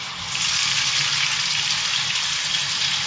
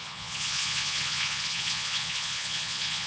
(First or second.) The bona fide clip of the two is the first